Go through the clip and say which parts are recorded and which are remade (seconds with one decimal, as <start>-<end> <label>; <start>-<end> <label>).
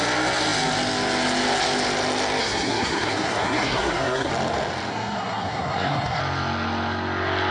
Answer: 0.0-2.4 recorded; 2.4-4.3 remade; 4.3-4.9 recorded; 4.9-6.2 remade; 6.2-7.5 recorded